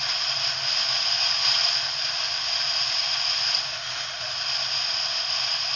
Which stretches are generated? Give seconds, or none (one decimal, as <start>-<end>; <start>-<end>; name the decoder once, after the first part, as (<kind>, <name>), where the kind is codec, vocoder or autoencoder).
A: none